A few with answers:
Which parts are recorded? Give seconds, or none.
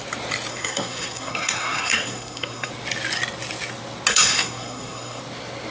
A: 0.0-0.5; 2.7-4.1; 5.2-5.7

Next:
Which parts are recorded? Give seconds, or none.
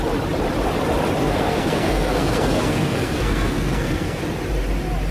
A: 0.0-1.2; 4.2-5.1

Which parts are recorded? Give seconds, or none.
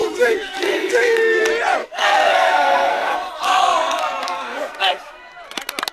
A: 1.4-1.8; 5.3-5.9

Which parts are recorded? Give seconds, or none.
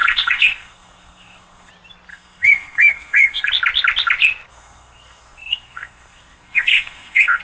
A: 1.7-2.1; 3.5-4.5